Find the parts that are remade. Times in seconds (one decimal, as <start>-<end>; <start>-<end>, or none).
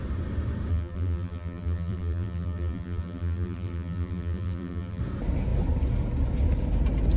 0.7-5.0